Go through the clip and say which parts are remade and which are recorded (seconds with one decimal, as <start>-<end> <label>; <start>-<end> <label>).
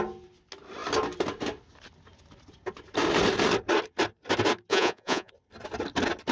0.0-4.7 recorded; 4.7-5.3 remade; 5.3-6.3 recorded